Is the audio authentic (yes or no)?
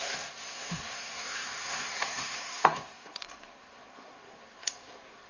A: no